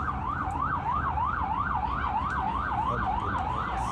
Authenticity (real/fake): real